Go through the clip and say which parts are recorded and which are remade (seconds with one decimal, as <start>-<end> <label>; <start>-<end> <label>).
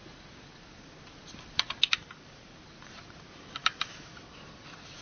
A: 0.0-5.0 recorded